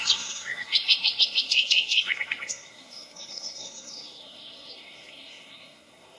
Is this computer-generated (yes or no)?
yes